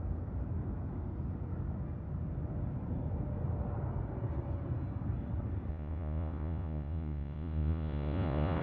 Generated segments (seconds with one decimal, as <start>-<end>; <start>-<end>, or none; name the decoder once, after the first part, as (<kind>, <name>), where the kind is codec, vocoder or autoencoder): 5.7-8.6 (vocoder, Vocos)